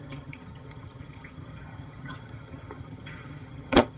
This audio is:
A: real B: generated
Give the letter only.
B